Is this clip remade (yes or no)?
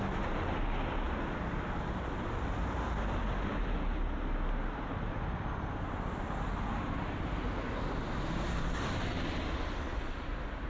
no